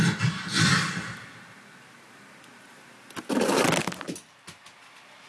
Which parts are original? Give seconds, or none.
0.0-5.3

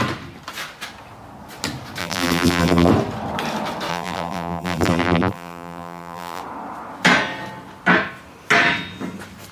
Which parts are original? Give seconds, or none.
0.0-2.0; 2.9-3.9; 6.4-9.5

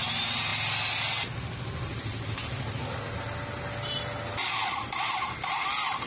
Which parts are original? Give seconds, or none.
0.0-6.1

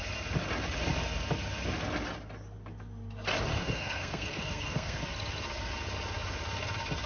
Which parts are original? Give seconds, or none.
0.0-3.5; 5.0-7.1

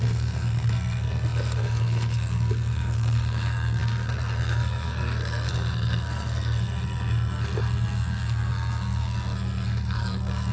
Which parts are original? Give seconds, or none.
none

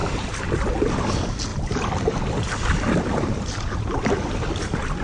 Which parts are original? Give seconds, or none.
0.9-1.5; 4.5-5.0